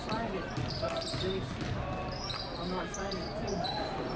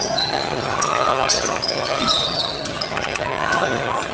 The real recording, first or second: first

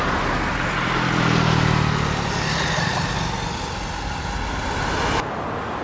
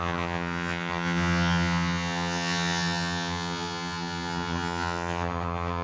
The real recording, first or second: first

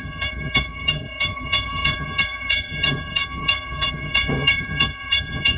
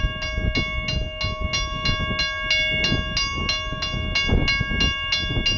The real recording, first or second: second